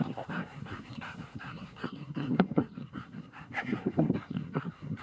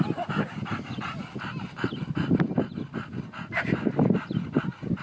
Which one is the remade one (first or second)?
first